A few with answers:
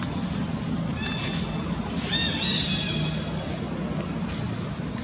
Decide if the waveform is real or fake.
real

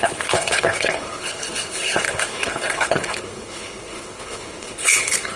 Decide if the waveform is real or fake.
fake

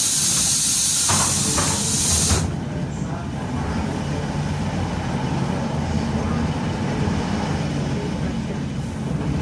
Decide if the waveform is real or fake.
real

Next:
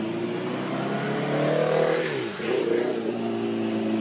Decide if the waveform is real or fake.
real